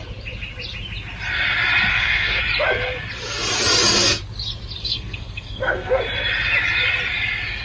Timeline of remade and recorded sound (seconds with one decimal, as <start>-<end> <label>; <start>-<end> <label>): 0.0-1.9 recorded; 1.9-2.4 remade; 2.4-4.8 recorded; 4.8-6.0 remade; 6.0-7.6 recorded